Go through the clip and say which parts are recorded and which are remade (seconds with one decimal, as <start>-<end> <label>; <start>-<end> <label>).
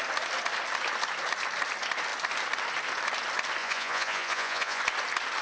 0.0-3.6 recorded; 3.6-4.8 remade; 4.8-5.4 recorded